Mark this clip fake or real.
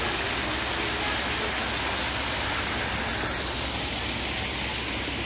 real